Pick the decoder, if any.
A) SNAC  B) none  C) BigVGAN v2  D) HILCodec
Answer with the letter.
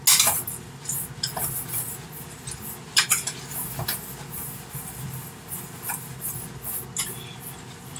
B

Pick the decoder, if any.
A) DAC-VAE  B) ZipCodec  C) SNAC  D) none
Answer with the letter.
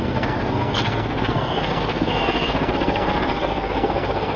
C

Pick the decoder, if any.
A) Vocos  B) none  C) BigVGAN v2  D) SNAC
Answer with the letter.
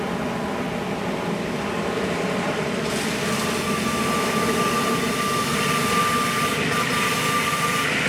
B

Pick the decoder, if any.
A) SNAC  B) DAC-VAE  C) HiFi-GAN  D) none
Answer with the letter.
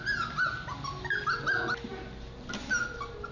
D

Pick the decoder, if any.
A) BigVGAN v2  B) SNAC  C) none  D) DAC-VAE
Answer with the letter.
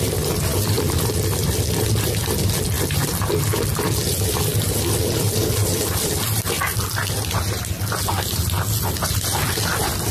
C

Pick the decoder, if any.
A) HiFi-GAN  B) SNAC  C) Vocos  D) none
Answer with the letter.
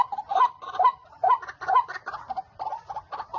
D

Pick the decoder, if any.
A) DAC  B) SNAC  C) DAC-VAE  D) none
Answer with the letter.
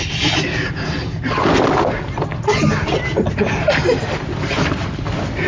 D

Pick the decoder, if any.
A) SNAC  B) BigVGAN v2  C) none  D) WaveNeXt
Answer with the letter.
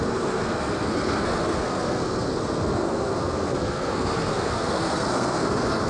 A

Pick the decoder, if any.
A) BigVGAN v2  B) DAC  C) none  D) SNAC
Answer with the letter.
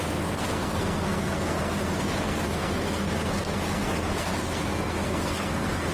D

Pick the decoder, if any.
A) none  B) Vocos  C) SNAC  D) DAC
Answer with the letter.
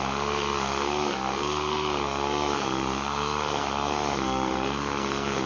C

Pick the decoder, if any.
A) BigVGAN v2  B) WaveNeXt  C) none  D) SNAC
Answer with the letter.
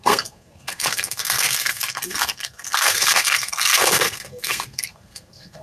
D